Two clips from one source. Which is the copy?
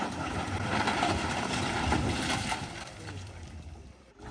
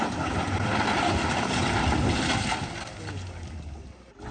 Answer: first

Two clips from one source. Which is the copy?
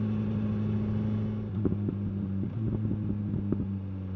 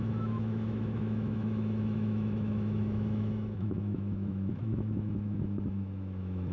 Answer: second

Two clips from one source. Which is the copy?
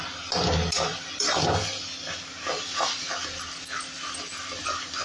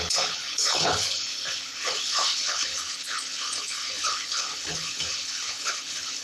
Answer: second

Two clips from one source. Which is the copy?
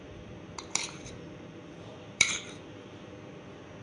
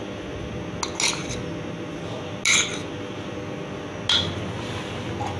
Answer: first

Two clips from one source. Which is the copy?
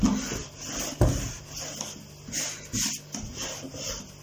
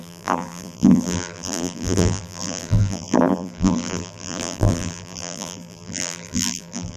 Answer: second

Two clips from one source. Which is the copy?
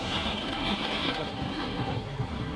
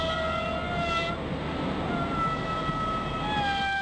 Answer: first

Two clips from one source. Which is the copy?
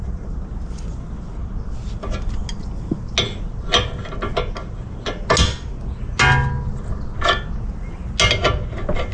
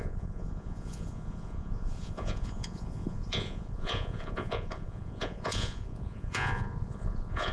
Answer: second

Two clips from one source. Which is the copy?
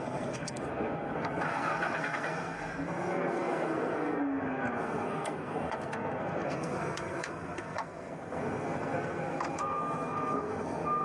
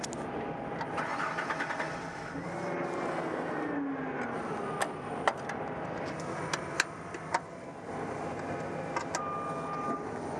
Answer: first